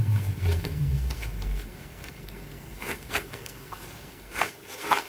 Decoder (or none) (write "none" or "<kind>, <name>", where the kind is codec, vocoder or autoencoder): codec, SNAC